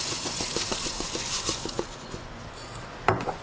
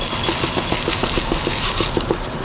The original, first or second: second